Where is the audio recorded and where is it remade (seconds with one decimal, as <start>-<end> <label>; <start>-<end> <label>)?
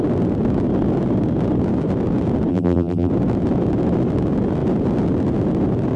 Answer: 0.0-2.5 recorded; 2.5-3.1 remade; 3.1-6.0 recorded